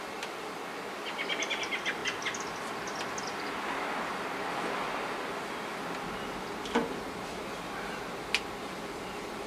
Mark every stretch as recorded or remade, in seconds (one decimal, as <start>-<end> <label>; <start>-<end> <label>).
0.0-9.5 recorded